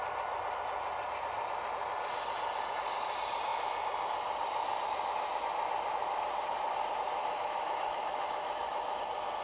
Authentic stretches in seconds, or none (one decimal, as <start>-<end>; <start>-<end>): 0.0-7.2; 9.0-9.4